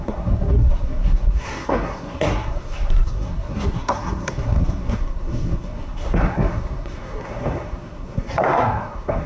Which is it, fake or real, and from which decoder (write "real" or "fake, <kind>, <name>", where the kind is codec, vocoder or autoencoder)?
fake, codec, SNAC